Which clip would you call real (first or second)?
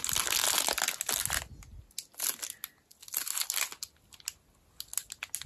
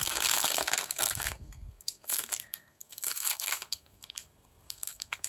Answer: first